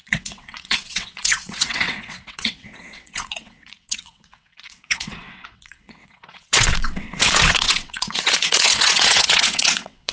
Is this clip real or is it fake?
fake